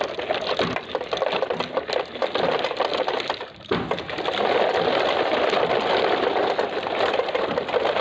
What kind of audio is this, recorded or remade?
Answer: recorded